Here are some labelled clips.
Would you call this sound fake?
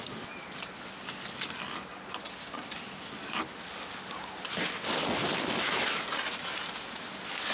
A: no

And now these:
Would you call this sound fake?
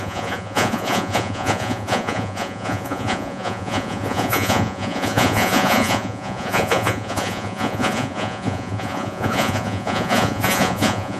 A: yes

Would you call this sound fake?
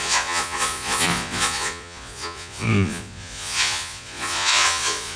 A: yes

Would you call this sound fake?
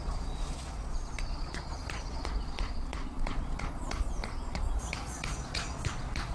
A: yes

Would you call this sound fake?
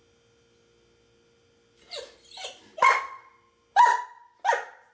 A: no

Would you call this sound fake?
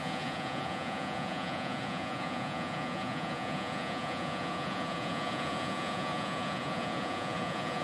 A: yes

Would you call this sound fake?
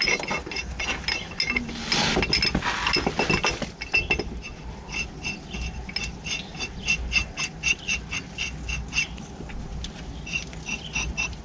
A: no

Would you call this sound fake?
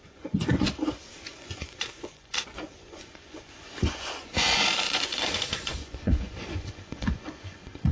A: yes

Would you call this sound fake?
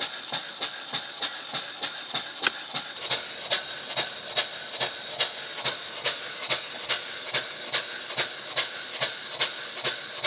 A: no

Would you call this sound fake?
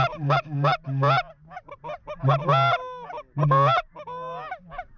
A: no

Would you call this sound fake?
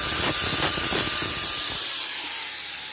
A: no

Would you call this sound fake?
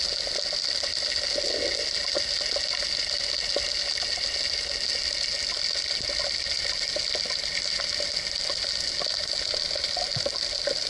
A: no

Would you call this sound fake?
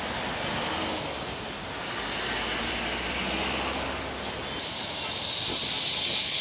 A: no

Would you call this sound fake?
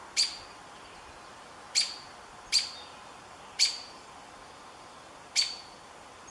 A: no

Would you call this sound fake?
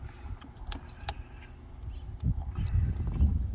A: no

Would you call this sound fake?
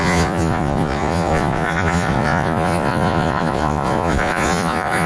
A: yes